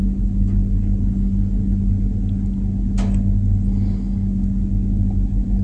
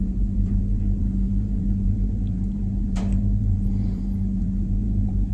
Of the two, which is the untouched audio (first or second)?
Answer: first